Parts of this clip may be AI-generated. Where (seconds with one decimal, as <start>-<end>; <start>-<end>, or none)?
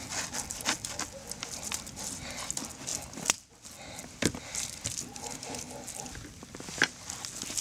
none